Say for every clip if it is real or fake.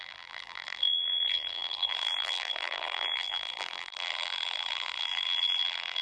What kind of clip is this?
fake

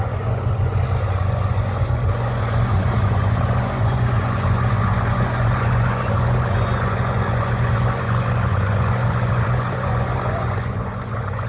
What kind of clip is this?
fake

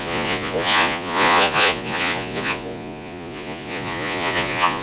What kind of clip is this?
fake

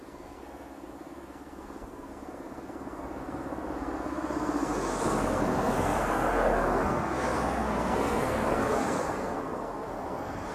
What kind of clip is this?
fake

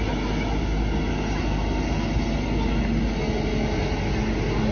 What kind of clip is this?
real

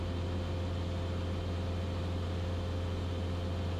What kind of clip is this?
real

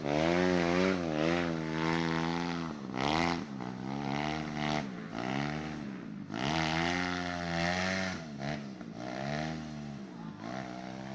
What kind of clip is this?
real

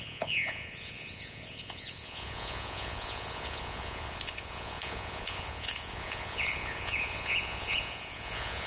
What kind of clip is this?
fake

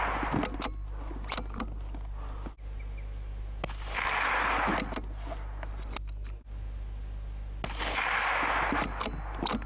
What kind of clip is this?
real